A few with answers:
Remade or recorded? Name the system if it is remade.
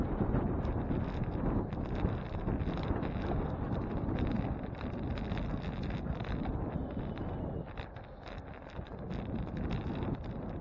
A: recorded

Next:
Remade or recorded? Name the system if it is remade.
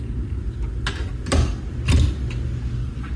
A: recorded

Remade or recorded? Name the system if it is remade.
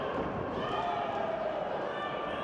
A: recorded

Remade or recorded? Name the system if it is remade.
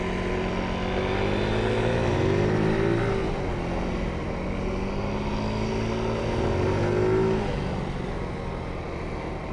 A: recorded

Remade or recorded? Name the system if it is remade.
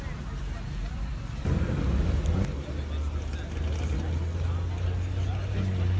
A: recorded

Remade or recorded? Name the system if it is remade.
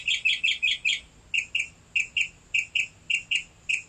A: recorded